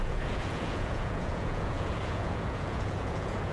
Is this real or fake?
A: fake